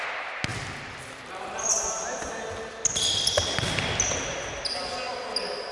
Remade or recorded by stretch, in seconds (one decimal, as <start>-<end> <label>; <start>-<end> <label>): 0.0-0.5 recorded; 0.5-2.3 remade; 2.3-5.7 recorded